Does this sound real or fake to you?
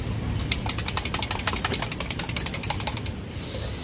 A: fake